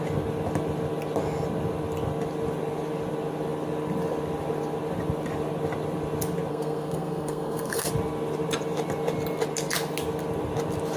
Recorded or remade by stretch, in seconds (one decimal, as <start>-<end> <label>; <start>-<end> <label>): 0.0-6.5 recorded; 6.5-7.9 remade; 7.9-11.0 recorded